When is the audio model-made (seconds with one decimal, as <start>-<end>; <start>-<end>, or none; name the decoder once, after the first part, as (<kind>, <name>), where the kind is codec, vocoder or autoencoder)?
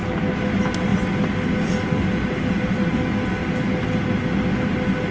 none